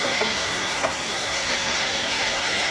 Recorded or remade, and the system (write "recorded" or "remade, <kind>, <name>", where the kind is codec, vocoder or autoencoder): remade, codec, SNAC